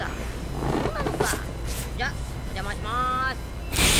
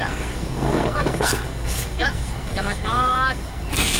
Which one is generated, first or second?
second